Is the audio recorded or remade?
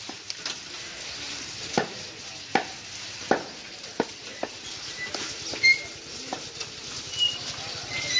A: recorded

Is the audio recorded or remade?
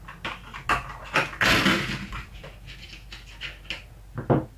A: recorded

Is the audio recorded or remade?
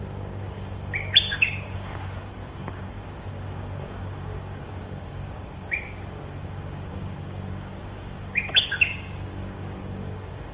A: remade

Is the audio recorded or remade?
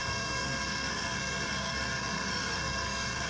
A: remade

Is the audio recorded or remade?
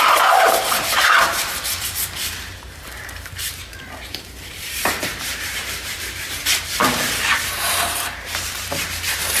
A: remade